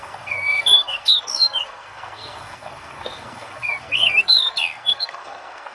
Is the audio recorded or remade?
remade